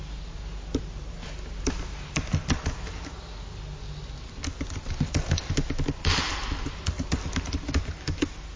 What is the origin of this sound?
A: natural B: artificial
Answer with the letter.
A